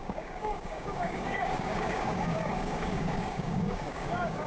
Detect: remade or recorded remade